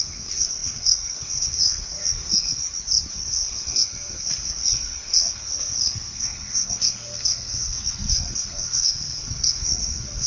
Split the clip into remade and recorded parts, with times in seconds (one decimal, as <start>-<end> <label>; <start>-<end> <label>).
0.0-2.6 remade; 2.6-3.1 recorded; 3.1-10.3 remade